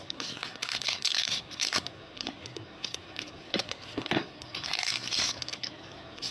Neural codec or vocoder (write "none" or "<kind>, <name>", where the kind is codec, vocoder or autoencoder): codec, SNAC